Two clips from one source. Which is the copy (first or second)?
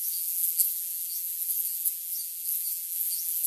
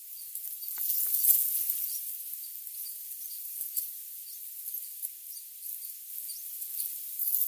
first